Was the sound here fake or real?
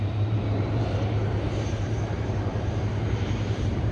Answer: fake